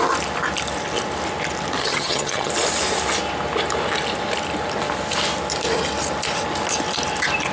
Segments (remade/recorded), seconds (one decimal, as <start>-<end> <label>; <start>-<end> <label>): 0.0-1.8 recorded; 1.8-2.5 remade; 2.5-7.5 recorded